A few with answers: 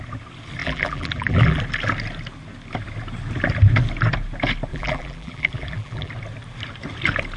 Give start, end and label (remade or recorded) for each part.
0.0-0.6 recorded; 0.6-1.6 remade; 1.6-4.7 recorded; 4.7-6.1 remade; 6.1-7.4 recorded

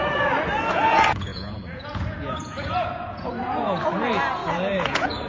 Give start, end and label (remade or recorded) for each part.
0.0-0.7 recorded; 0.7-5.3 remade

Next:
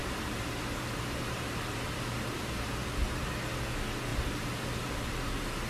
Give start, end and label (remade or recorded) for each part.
0.0-3.4 remade; 3.4-4.1 recorded; 4.1-5.2 remade; 5.2-5.7 recorded

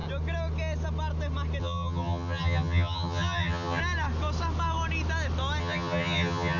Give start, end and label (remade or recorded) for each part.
0.0-1.6 recorded; 1.6-3.8 remade; 3.8-5.6 recorded; 5.6-6.6 remade